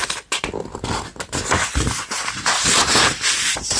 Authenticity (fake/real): real